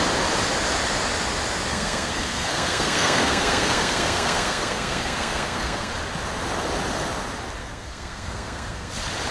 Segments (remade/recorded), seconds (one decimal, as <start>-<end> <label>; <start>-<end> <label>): 0.0-1.7 recorded; 1.7-5.9 remade; 5.9-7.6 recorded; 7.6-8.9 remade; 8.9-9.3 recorded

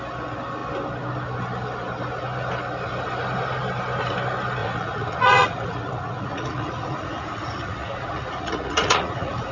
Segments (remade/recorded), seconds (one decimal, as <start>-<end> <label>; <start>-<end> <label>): 0.0-4.6 recorded; 4.6-9.5 remade

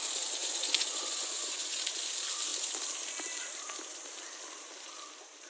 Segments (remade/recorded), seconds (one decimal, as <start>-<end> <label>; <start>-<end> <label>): 0.0-0.4 recorded; 0.4-1.8 remade; 1.8-5.5 recorded

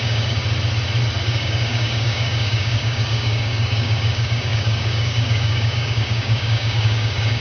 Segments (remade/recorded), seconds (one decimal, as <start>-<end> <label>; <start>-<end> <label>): 0.0-0.4 remade; 0.4-1.2 recorded; 1.2-7.4 remade